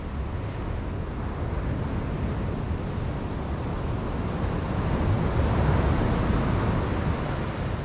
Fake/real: real